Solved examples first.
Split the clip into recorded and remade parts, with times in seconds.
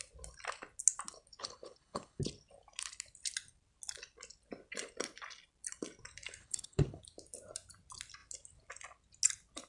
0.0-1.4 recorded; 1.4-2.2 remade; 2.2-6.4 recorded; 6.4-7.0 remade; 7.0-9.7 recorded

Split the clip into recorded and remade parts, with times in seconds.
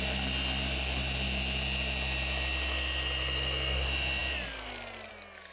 0.0-5.5 recorded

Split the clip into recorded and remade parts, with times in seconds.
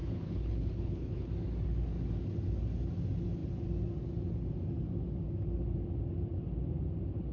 0.0-1.3 remade; 1.3-7.3 recorded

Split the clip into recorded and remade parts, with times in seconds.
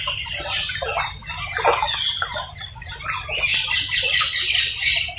0.0-5.2 recorded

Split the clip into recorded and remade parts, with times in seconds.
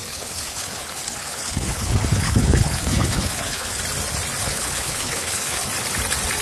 0.0-3.8 remade; 3.8-4.4 recorded; 4.4-5.7 remade; 5.7-6.4 recorded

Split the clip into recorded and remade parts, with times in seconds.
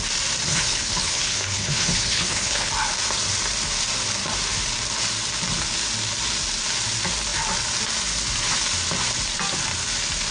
0.0-0.5 recorded; 0.5-2.7 remade; 2.7-10.3 recorded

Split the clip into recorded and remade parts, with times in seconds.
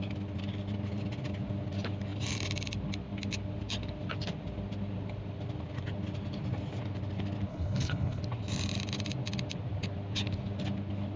0.0-7.5 recorded; 7.5-8.2 remade; 8.2-11.2 recorded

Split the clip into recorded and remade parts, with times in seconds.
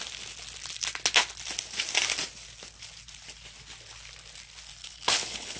0.0-4.8 recorded; 4.8-5.6 remade